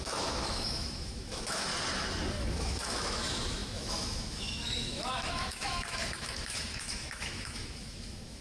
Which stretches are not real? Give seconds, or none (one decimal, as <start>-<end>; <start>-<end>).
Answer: 0.0-1.7; 2.3-8.4